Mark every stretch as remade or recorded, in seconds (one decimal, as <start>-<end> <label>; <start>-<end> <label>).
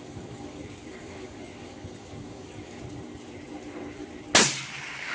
0.0-2.8 remade; 2.8-5.1 recorded